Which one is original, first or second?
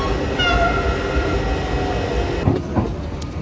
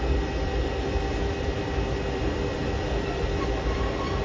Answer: first